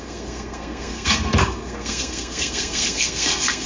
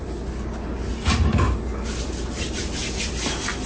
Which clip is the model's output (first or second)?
first